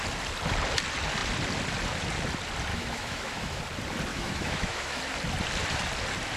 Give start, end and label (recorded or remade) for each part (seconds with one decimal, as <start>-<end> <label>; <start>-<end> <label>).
0.0-2.7 recorded; 2.7-3.6 remade; 3.6-4.1 recorded; 4.1-5.0 remade; 5.0-6.4 recorded